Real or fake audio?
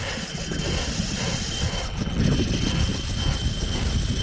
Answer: real